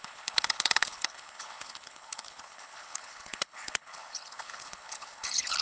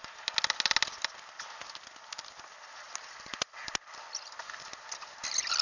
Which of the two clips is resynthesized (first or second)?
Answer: first